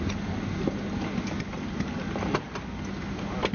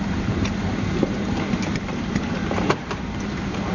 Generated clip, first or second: second